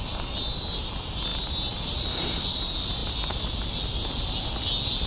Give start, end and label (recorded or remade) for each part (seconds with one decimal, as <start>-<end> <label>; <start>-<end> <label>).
0.0-5.1 recorded